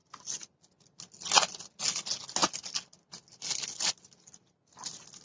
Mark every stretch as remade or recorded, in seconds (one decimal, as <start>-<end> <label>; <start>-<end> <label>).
0.0-5.2 recorded

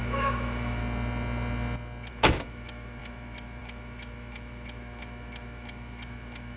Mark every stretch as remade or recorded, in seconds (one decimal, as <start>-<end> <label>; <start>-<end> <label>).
0.0-0.8 remade; 0.8-2.1 recorded; 2.1-6.6 remade